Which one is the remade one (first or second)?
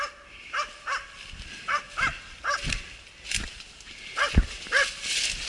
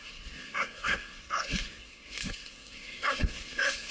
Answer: second